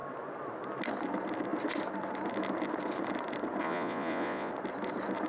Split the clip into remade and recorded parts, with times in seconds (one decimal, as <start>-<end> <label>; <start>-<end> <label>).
0.0-3.6 recorded; 3.6-4.5 remade; 4.5-5.3 recorded